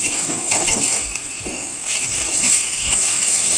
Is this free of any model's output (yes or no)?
no